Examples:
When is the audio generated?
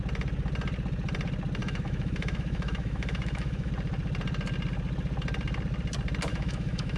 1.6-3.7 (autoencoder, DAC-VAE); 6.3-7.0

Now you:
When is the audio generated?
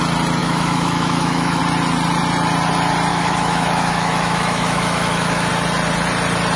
0.4-1.6 (autoencoder, DAC-VAE); 3.1-5.5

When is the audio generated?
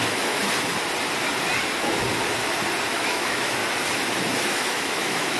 0.0-0.4 (autoencoder, DAC-VAE); 2.9-3.6; 4.4-5.4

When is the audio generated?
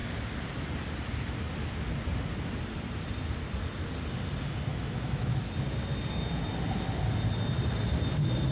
4.7-5.5 (autoencoder, DAC-VAE)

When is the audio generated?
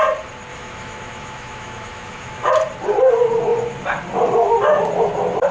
0.5-2.5 (autoencoder, DAC-VAE)